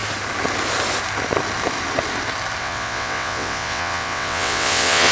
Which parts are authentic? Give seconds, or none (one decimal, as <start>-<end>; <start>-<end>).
0.0-2.6

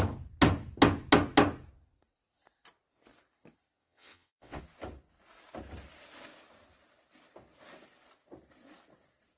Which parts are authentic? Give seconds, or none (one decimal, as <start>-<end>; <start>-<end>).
0.0-3.8; 4.6-9.4

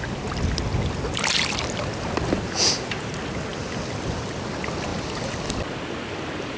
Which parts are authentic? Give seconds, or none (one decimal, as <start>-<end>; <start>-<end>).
0.0-6.6

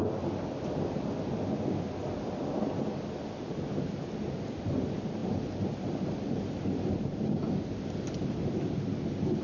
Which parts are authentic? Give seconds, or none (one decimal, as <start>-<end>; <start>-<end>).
0.0-9.4

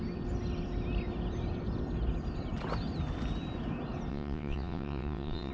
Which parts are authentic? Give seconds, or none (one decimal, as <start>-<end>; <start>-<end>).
0.0-4.1

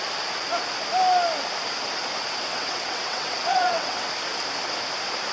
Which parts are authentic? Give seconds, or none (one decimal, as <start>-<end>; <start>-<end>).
0.0-2.5; 4.1-5.3

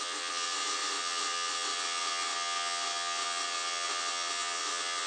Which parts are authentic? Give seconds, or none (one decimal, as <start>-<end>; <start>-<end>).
none

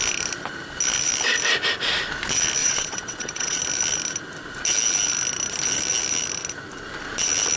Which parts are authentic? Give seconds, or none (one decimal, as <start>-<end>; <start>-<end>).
0.0-2.6; 3.6-7.6